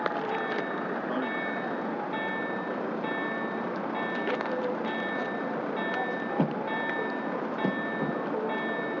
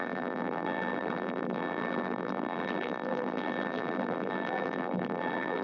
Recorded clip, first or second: first